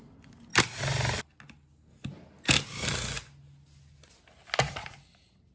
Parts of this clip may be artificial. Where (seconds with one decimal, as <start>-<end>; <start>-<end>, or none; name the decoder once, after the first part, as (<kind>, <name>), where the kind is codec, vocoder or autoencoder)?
none